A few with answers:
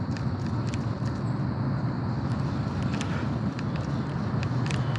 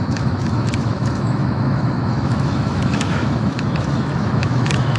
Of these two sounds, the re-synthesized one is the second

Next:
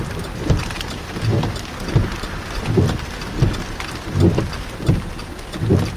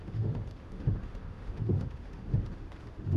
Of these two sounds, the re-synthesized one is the second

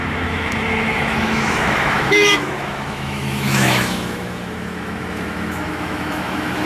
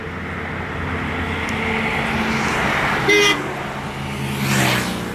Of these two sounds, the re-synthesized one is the first